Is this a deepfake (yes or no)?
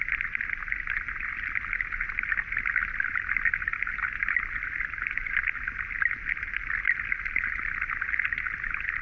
no